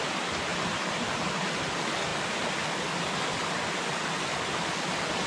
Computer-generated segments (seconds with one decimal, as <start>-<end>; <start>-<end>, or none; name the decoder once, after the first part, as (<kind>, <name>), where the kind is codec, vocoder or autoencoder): none